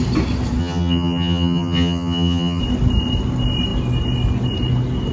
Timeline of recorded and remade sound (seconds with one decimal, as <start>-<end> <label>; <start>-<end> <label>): 0.0-0.6 recorded; 0.6-2.6 remade; 2.6-5.1 recorded